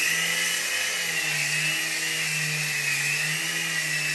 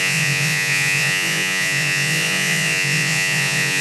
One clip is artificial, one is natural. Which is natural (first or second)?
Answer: first